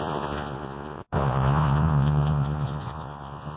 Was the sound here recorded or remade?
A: remade